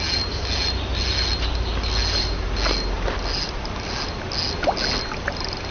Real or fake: real